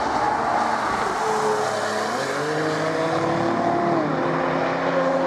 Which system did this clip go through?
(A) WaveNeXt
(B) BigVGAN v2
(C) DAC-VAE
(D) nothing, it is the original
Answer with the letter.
D